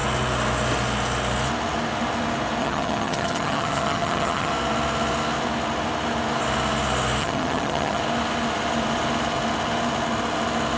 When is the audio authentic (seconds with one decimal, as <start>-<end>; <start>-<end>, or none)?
0.0-2.6; 4.5-7.2; 8.0-10.8